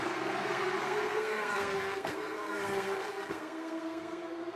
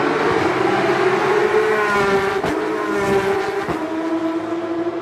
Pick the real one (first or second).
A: second